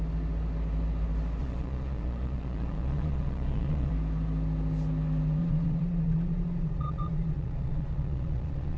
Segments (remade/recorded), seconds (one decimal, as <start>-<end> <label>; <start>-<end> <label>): 0.0-1.4 recorded; 1.4-3.9 remade; 3.9-5.4 recorded; 5.4-8.8 remade